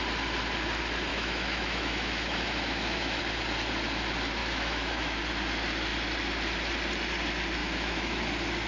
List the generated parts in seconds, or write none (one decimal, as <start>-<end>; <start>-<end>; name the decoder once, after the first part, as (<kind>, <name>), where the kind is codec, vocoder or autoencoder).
1.1-3.2 (autoencoder, DAC-VAE); 4.4-5.2; 7.6-8.2

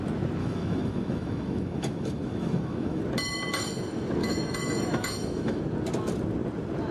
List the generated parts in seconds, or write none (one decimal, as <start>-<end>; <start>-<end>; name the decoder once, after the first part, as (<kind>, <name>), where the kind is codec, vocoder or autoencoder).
0.4-3.0 (autoencoder, DAC-VAE); 4.2-5.6

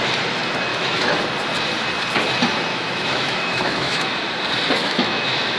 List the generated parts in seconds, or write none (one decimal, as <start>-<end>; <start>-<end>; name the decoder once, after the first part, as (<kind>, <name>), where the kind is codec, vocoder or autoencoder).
0.7-1.2 (autoencoder, DAC-VAE); 2.7-4.3; 4.8-5.6

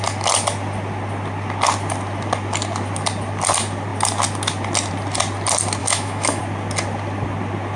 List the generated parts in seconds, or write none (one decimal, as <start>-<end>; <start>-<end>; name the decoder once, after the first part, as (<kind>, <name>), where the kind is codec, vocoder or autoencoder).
5.8-6.4 (autoencoder, DAC-VAE)

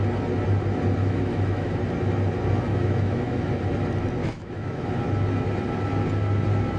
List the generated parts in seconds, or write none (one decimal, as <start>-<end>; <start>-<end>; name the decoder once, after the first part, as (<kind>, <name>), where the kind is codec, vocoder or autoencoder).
1.0-1.8 (autoencoder, DAC-VAE); 2.7-3.4; 4.2-4.9

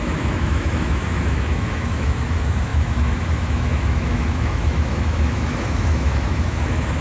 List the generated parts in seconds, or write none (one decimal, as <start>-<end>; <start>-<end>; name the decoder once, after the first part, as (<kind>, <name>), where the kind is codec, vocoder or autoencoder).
0.0-7.0 (autoencoder, DAC-VAE)